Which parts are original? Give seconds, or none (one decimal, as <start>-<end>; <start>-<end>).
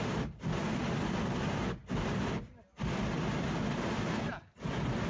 0.0-5.1